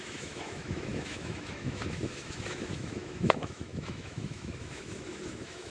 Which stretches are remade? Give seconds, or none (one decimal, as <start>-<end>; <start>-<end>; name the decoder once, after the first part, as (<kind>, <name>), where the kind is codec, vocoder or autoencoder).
0.0-5.7 (autoencoder, DAC-VAE)